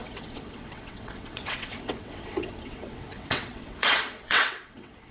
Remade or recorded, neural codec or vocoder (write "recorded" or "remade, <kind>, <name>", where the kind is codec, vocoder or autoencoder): remade, vocoder, WaveNeXt